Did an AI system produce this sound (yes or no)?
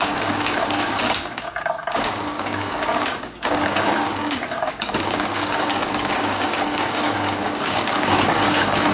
yes